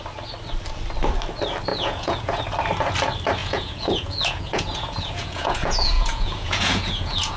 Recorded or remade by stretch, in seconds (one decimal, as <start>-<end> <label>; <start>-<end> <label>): 0.0-1.7 recorded; 1.7-2.4 remade; 2.4-3.4 recorded; 3.4-7.4 remade

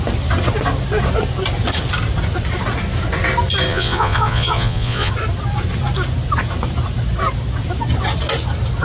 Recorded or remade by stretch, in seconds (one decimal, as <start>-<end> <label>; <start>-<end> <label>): 0.0-3.7 recorded; 3.7-5.1 remade; 5.1-8.8 recorded

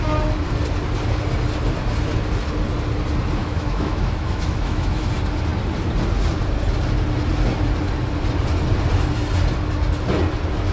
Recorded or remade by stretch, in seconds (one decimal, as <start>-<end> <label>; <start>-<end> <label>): 0.0-3.4 recorded; 3.4-5.1 remade; 5.1-10.7 recorded

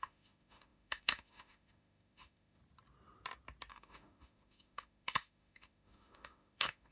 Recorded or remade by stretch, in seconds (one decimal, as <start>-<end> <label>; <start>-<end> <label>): 0.0-2.6 remade; 2.6-3.7 recorded; 3.7-6.9 remade

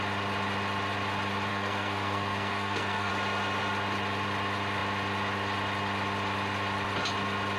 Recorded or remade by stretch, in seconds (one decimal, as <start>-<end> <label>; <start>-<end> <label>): 0.0-1.5 recorded; 1.5-3.1 remade; 3.1-7.6 recorded

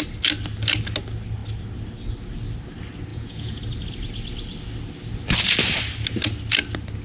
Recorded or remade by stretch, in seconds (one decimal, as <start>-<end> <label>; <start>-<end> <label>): 0.0-3.1 recorded; 3.1-3.6 remade; 3.6-7.0 recorded

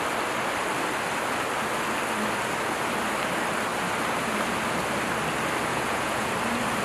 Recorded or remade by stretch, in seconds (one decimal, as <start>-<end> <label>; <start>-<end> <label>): 0.0-5.7 recorded; 5.7-6.3 remade; 6.3-6.8 recorded